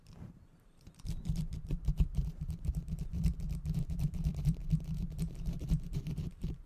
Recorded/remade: remade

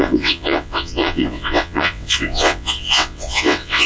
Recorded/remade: remade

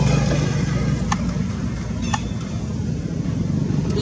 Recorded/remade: recorded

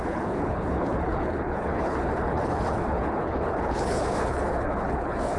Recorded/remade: remade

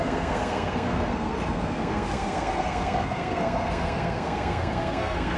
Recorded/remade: remade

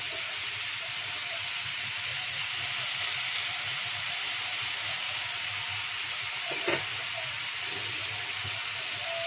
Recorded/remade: recorded